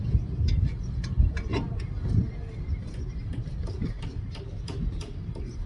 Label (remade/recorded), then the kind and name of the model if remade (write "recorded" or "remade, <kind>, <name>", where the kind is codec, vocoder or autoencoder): recorded